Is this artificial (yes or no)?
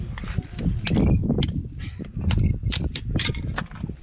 no